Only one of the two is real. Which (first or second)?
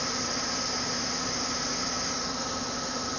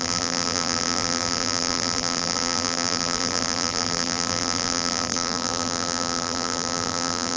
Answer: first